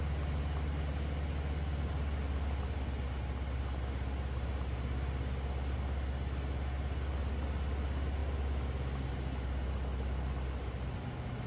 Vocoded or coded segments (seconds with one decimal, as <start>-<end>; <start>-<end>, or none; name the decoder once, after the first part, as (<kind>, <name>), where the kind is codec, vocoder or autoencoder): none